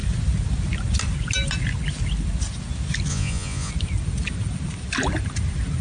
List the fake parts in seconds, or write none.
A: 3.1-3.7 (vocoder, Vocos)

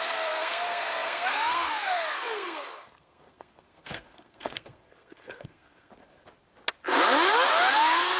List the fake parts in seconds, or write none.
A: 0.0-5.9 (codec, SNAC); 7.7-8.2

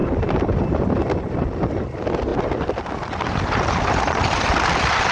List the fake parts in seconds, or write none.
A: 0.0-0.9 (vocoder, BigVGAN v2)

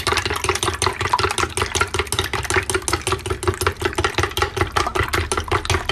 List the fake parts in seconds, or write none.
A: none

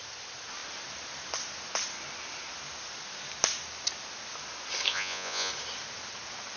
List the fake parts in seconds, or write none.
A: 4.9-5.5 (vocoder, Vocos)